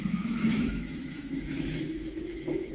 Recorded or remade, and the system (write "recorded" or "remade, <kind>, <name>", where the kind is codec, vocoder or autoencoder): remade, autoencoder, DAC-VAE